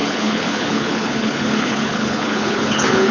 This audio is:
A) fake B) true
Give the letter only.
A